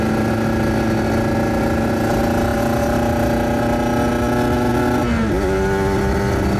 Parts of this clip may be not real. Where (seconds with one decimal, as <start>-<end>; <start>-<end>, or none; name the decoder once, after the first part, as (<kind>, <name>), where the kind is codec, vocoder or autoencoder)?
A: none